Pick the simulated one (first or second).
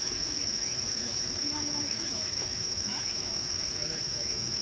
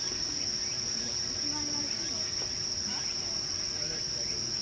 first